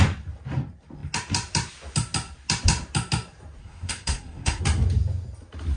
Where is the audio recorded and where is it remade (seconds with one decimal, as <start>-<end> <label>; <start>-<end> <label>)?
0.0-3.6 recorded; 3.6-4.6 remade; 4.6-5.8 recorded